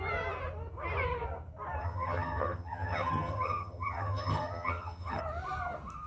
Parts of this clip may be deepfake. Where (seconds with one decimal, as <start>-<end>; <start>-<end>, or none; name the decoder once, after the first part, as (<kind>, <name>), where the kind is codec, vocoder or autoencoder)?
1.8-5.2 (vocoder, HiFi-GAN)